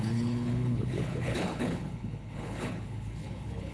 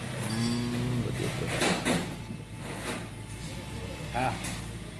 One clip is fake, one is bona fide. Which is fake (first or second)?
first